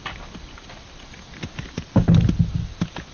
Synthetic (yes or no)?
no